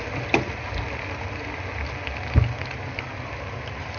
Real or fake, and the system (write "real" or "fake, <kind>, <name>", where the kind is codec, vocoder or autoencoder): real